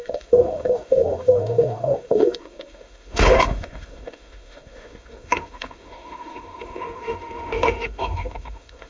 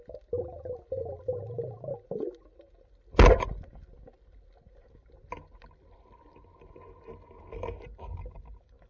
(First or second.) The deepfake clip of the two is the first